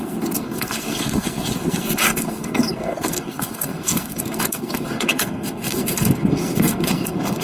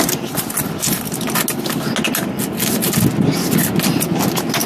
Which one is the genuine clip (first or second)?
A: second